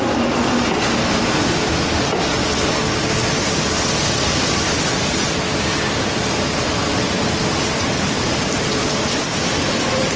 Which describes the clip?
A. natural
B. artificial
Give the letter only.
A